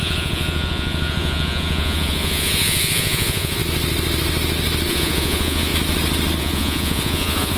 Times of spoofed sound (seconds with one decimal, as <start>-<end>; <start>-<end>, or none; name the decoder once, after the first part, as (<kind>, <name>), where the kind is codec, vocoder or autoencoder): 0.0-3.6 (vocoder, Vocos); 4.9-5.7; 6.4-7.6